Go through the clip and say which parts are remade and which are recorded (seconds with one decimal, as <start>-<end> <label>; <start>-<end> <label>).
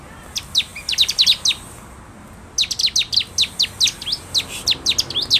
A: 0.0-5.4 recorded